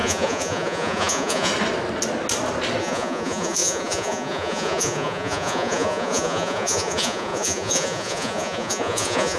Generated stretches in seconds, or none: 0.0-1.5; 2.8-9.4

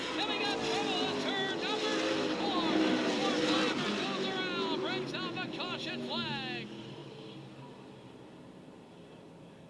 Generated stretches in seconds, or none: none

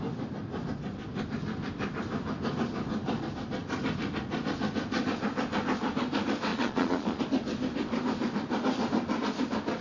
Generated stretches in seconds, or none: 6.5-7.2

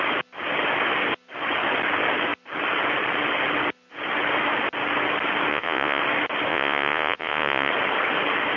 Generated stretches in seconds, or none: 5.5-6.0; 6.5-7.7

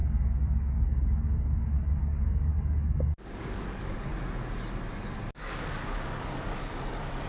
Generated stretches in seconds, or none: 0.0-4.1; 5.4-7.3

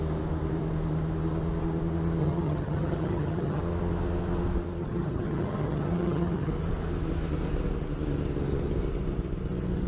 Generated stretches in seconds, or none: 2.2-3.6; 4.8-6.5